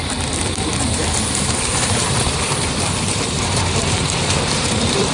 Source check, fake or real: fake